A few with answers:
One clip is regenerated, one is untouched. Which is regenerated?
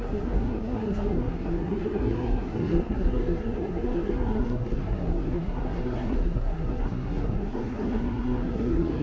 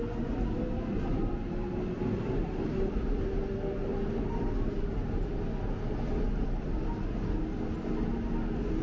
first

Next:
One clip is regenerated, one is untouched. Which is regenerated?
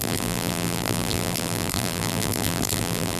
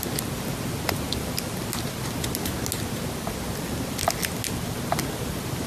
first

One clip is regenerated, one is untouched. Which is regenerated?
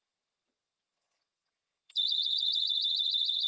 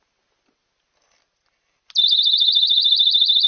first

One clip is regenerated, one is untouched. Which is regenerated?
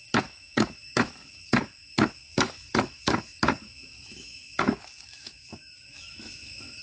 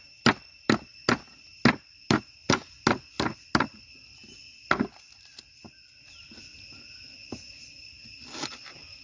first